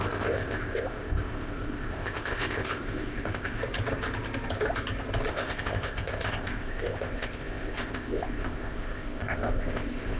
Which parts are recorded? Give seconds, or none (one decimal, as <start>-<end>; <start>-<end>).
3.6-5.3